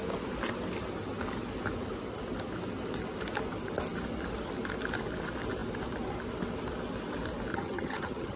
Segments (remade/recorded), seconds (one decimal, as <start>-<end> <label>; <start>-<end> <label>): 0.0-7.5 recorded; 7.5-8.4 remade